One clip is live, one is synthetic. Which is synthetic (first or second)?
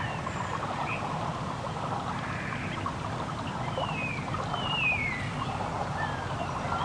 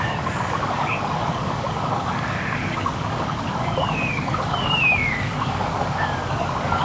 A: second